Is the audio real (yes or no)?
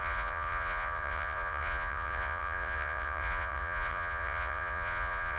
no